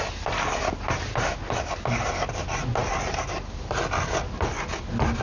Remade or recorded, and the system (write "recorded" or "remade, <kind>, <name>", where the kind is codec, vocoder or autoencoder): recorded